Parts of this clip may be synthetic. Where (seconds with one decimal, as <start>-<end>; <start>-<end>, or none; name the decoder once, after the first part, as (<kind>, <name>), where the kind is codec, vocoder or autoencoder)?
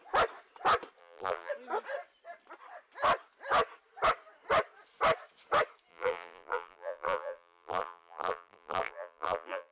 1.0-1.5 (vocoder, BigVGAN v2); 5.9-9.7